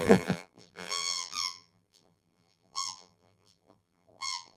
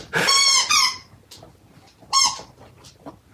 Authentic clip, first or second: second